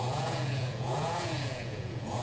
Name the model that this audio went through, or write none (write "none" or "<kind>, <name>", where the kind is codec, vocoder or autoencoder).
vocoder, Vocos